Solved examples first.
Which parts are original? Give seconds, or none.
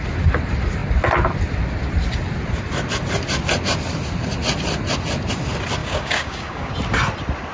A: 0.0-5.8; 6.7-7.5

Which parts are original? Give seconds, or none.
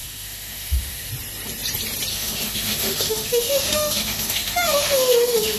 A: 1.1-2.1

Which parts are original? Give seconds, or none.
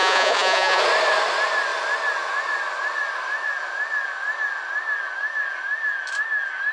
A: 0.8-6.7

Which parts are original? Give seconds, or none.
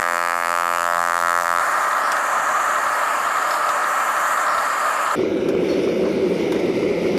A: 1.6-7.2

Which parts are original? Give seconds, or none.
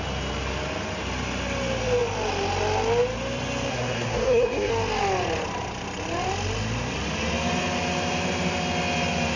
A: 0.0-3.7; 4.7-9.4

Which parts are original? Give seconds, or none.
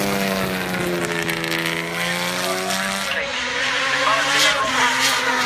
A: 0.0-5.5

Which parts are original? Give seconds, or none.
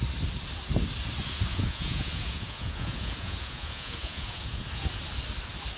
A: 0.0-1.5; 5.0-5.8